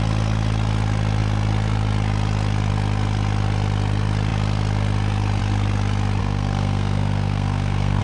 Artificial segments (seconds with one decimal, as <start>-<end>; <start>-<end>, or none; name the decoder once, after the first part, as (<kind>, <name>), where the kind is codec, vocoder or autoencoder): 6.2-8.0 (codec, SNAC)